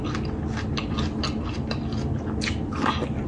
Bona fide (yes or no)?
yes